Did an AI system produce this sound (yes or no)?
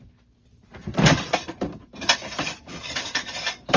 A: yes